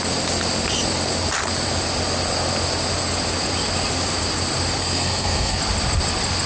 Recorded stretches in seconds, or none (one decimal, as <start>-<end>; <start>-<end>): 0.0-4.8; 5.6-6.5